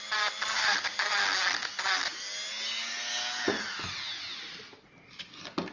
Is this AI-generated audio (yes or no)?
no